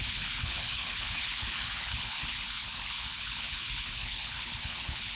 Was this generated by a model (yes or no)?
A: yes